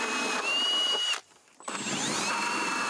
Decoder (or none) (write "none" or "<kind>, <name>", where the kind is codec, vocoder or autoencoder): vocoder, BigVGAN v2